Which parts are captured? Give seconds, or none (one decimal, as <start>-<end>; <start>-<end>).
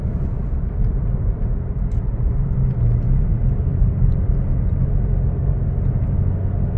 0.0-0.4; 1.4-3.7; 4.3-6.8